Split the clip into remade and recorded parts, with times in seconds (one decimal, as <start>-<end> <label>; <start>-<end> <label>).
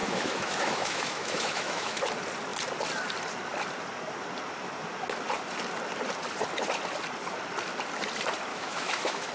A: 0.0-2.0 remade; 2.0-8.5 recorded; 8.5-9.3 remade